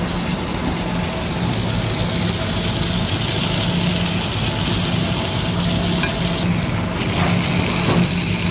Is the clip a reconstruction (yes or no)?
no